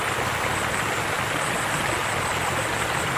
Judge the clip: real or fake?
real